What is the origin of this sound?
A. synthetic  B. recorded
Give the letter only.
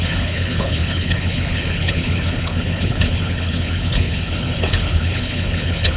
A